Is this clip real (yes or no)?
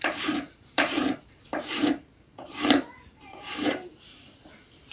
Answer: no